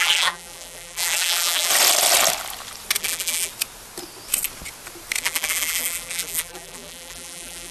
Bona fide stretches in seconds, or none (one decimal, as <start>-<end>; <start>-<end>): 1.7-3.0; 3.5-5.2